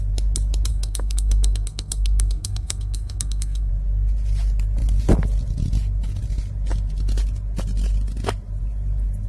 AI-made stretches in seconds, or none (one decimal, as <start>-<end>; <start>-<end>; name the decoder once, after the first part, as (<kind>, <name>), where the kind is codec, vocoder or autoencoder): 0.7-3.7 (codec, SNAC)